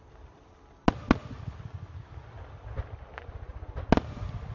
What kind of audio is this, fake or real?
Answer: real